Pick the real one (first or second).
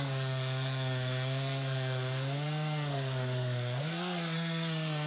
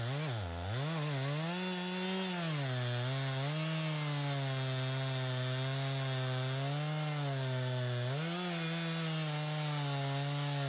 second